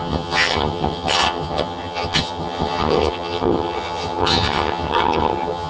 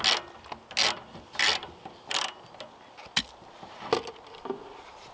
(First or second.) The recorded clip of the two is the second